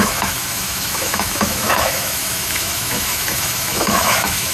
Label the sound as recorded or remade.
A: remade